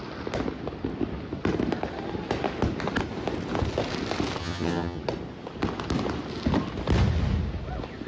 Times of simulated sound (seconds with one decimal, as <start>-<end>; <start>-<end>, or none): 4.4-5.0